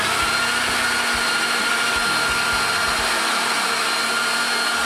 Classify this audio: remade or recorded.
recorded